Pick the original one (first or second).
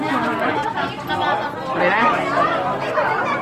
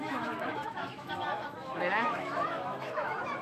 first